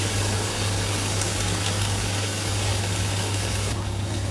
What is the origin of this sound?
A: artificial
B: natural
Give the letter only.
A